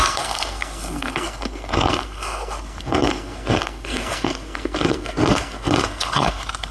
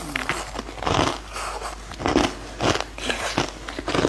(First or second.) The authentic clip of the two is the second